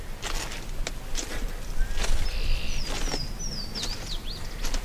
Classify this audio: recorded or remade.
recorded